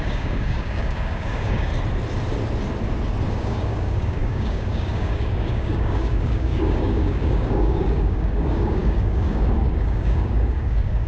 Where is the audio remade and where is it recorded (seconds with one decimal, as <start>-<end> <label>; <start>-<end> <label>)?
0.0-1.7 remade; 1.7-3.3 recorded; 3.3-11.1 remade